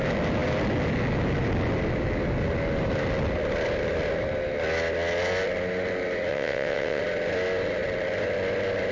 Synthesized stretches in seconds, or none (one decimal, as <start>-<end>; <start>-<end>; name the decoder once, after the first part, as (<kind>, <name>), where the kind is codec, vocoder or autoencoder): 6.3-7.0 (vocoder, WaveNeXt)